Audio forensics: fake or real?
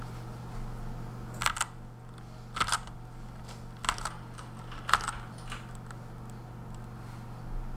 real